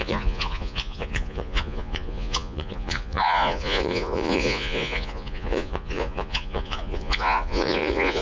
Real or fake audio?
fake